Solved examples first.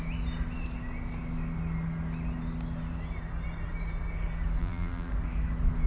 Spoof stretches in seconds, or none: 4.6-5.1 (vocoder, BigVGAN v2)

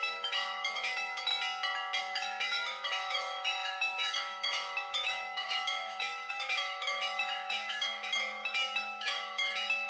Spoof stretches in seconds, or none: 0.0-1.3 (autoencoder, DAC-VAE); 2.0-9.9

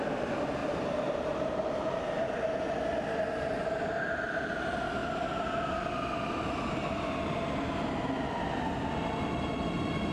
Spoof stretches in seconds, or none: 0.6-2.3 (vocoder, BigVGAN v2); 5.0-5.6